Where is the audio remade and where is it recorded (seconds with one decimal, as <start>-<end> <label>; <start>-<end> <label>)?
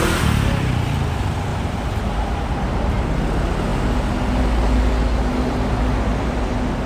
0.0-1.5 recorded; 1.5-2.1 remade; 2.1-6.9 recorded